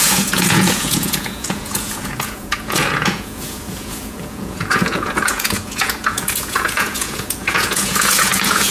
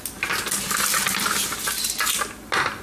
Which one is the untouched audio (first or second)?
second